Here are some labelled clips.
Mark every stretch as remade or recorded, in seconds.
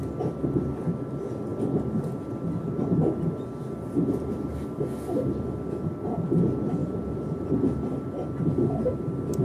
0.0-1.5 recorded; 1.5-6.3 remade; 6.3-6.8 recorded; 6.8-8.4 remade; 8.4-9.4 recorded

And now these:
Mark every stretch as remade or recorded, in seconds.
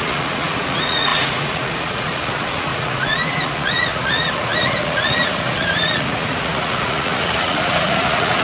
0.0-8.4 remade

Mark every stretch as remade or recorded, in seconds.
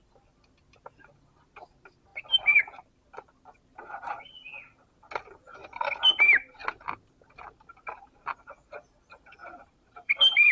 0.0-9.4 recorded; 9.4-10.5 remade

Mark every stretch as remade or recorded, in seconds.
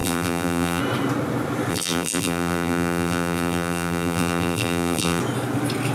0.0-0.8 remade; 0.8-1.7 recorded; 1.7-5.2 remade; 5.2-5.9 recorded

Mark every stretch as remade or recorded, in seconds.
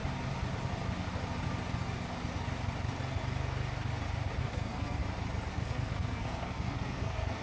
0.0-4.4 recorded; 4.4-5.0 remade; 5.0-5.5 recorded; 5.5-7.4 remade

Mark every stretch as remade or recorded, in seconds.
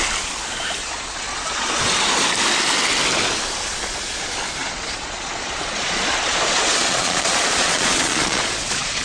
0.0-0.8 recorded; 0.8-1.8 remade; 1.8-4.6 recorded; 4.6-9.0 remade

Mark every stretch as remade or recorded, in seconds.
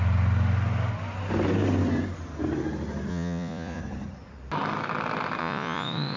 0.0-3.1 recorded; 3.1-3.8 remade; 3.8-5.4 recorded; 5.4-6.2 remade